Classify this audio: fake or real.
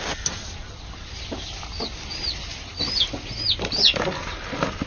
real